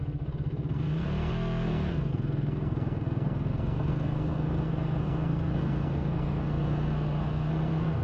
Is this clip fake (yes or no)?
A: yes